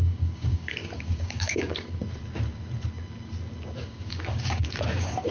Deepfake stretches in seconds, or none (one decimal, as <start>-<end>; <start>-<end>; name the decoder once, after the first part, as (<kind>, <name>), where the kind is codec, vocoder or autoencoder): 0.0-2.0 (codec, DAC); 3.8-5.3